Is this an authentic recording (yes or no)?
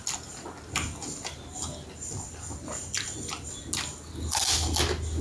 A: yes